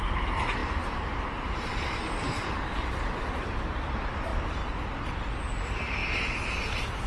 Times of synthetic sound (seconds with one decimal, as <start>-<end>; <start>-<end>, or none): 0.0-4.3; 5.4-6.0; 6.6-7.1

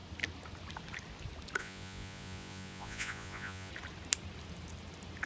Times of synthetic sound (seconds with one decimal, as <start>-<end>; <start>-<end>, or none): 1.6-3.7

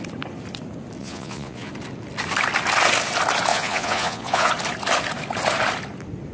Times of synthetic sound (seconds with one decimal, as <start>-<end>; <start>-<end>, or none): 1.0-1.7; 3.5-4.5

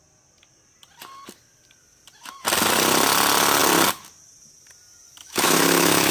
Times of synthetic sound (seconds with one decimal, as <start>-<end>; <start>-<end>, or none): 5.2-6.1

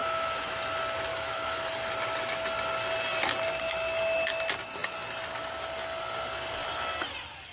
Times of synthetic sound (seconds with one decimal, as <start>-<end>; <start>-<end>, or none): 0.0-0.5; 1.1-1.6

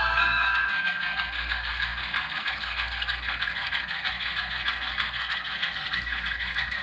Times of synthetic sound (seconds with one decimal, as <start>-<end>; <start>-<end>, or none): 0.0-6.8

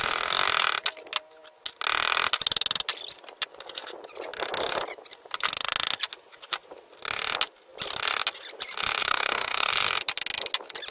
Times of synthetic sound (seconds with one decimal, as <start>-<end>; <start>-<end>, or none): 9.0-9.7

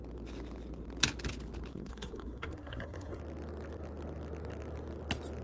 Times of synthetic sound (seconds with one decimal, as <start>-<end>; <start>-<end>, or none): 1.7-3.2